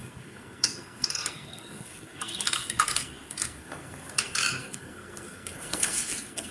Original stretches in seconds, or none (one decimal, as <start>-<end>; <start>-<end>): none